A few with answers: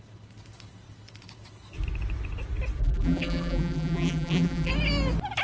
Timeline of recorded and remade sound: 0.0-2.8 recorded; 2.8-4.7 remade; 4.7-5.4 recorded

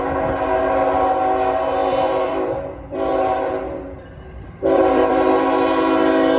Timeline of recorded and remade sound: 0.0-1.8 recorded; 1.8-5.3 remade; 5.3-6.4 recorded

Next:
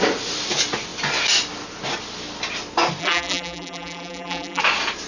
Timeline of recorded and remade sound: 0.0-3.0 recorded; 3.0-4.6 remade; 4.6-5.1 recorded

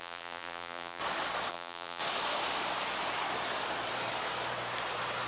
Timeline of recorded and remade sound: 0.0-1.0 remade; 1.0-1.5 recorded; 1.5-2.0 remade; 2.0-5.3 recorded

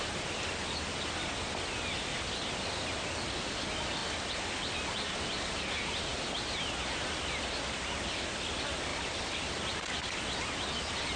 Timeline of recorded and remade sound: 0.0-4.0 recorded; 4.0-5.6 remade; 5.6-8.9 recorded; 8.9-9.8 remade; 9.8-11.2 recorded